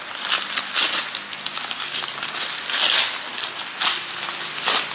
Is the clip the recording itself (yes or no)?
yes